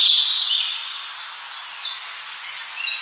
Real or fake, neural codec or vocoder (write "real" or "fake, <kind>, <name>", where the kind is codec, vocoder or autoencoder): real